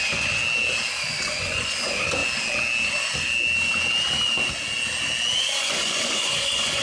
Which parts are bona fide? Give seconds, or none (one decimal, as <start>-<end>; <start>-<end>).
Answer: 0.4-1.0; 2.2-5.6